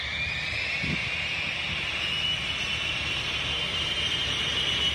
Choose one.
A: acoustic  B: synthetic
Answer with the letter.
A